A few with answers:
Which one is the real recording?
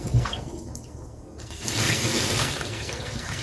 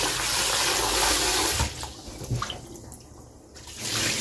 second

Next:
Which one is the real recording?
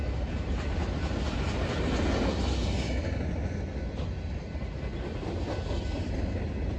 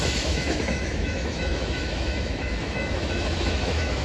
first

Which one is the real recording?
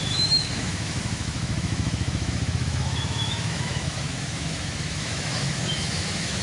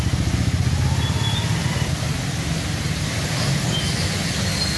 second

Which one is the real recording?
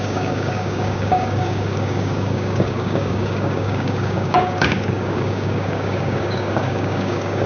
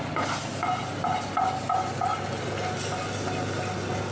second